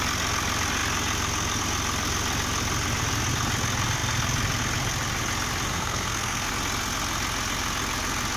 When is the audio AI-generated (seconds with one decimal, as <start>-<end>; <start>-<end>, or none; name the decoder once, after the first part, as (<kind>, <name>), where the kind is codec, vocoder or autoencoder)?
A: 5.7-6.5 (codec, SNAC)